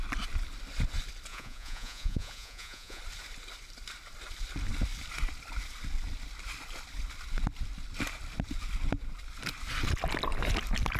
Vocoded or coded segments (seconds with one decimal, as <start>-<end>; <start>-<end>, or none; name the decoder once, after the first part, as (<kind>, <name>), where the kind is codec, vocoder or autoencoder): 1.3-3.0 (vocoder, Vocos)